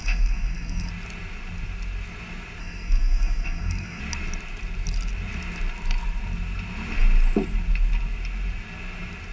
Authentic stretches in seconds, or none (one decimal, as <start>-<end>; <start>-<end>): 0.9-2.6; 4.0-9.3